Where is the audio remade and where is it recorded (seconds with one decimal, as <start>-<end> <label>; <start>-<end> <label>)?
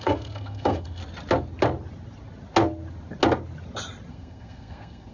0.0-1.0 remade; 1.0-4.1 recorded; 4.1-5.1 remade